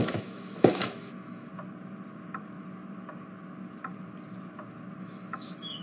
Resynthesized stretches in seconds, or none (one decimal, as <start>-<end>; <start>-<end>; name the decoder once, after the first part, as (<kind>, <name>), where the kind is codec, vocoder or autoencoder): 0.0-1.5 (autoencoder, DAC-VAE); 5.0-5.8